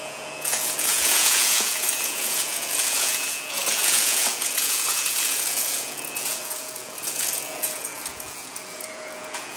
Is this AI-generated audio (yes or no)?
yes